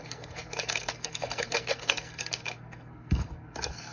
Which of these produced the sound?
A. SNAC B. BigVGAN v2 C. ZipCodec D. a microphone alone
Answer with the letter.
A